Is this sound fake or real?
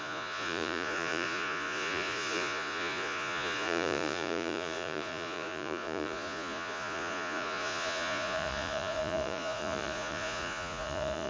fake